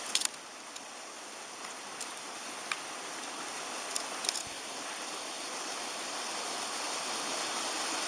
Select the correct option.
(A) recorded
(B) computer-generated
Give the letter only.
A